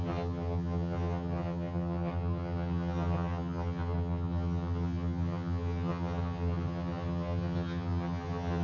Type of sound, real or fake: fake